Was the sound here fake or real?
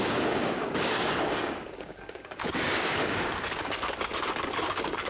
fake